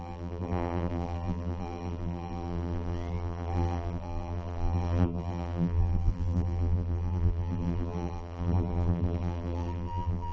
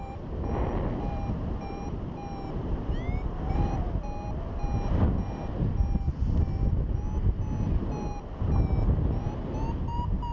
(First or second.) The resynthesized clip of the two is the first